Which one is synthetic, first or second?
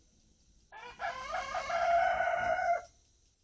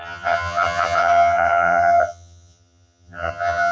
second